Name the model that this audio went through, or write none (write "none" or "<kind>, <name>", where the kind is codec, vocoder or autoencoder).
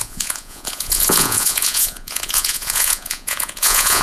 vocoder, Vocos